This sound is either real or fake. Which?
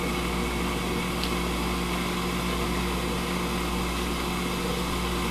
real